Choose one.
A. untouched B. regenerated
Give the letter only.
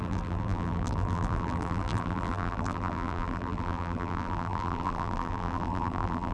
B